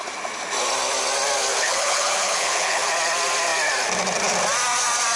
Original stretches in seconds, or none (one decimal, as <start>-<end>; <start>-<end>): 0.0-1.5; 2.9-5.2